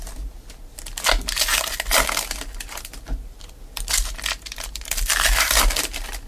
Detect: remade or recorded recorded